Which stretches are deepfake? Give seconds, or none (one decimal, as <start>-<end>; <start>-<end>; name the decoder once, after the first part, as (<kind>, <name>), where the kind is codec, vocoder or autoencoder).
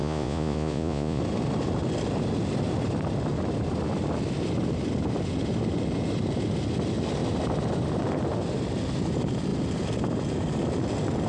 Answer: 0.0-1.2 (vocoder, Vocos)